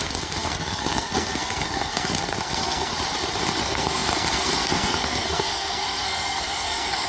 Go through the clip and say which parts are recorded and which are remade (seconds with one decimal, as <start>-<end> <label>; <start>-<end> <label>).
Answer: 0.0-2.9 remade; 2.9-3.6 recorded; 3.6-7.1 remade